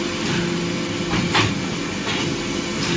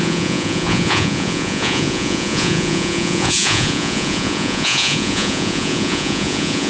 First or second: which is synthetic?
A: second